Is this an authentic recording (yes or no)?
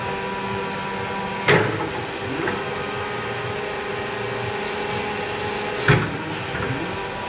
yes